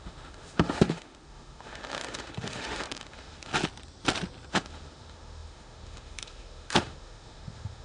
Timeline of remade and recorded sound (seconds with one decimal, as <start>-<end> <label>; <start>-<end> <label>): 0.0-3.5 remade; 3.5-4.5 recorded; 4.5-7.8 remade